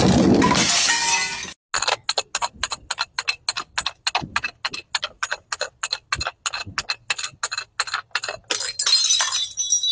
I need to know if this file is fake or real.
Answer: real